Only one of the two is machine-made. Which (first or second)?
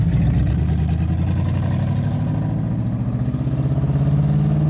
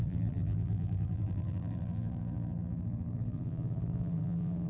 second